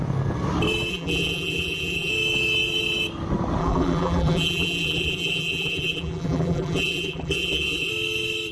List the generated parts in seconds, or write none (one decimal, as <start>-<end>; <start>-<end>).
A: 0.9-2.1; 3.6-7.9